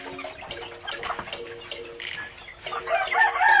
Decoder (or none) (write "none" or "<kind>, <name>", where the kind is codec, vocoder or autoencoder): none